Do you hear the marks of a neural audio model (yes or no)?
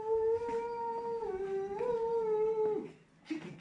no